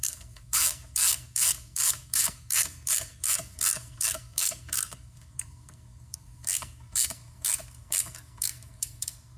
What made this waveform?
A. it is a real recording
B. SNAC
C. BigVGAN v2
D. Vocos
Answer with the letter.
B